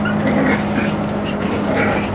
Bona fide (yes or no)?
yes